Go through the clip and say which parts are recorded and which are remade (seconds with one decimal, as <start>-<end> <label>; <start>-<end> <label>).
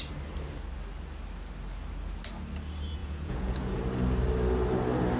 0.0-3.0 recorded; 3.0-3.8 remade; 3.8-5.2 recorded